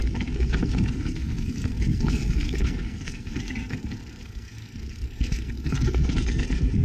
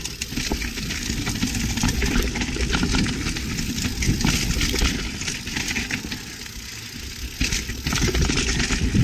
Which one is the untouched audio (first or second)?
second